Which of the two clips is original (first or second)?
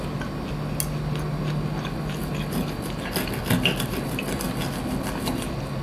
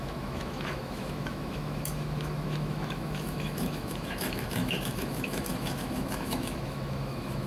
first